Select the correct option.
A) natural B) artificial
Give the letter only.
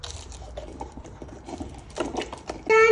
A